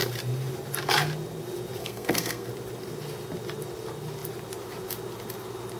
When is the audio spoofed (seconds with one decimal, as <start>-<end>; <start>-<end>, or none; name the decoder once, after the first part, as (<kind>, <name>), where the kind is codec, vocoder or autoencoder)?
1.8-2.5 (codec, SNAC)